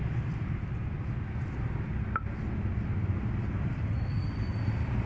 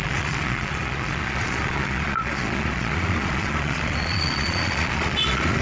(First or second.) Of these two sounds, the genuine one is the first